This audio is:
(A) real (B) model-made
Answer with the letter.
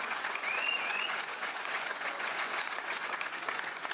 B